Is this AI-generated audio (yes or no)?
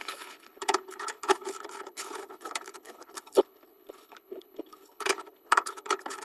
yes